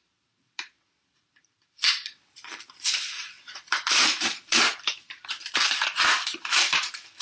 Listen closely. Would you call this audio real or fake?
fake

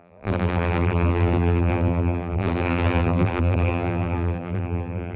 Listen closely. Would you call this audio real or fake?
fake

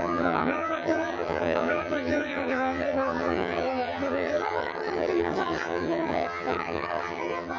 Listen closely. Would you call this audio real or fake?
fake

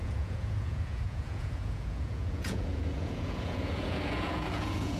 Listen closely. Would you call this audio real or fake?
fake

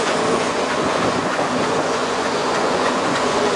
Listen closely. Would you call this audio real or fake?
fake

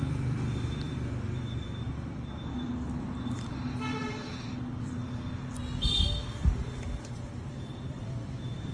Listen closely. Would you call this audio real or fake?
fake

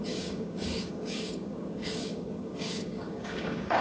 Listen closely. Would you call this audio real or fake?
fake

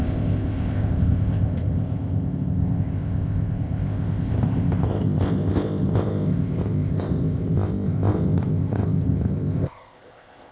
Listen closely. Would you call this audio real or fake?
fake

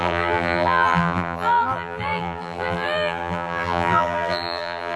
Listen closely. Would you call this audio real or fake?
fake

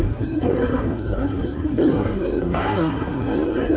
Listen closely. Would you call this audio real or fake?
fake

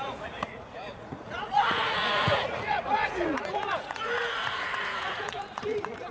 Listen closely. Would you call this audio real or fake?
fake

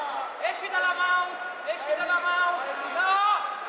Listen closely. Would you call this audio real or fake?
real